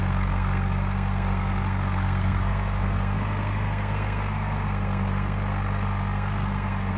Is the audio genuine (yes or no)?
no